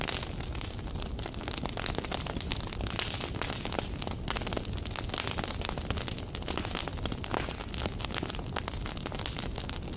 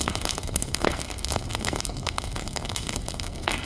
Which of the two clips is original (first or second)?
first